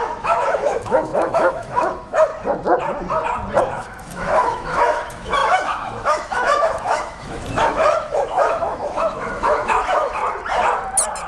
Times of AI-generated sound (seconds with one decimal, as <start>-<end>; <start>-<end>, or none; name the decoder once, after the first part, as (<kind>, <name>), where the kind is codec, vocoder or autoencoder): 0.0-2.3 (autoencoder, DAC-VAE); 3.6-10.2